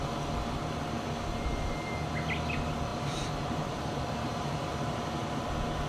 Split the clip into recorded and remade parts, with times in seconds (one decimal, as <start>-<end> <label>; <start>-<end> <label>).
0.0-2.9 recorded; 2.9-5.4 remade; 5.4-5.9 recorded